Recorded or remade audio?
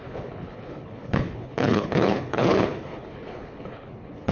remade